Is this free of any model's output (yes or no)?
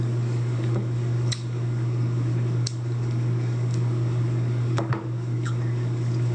no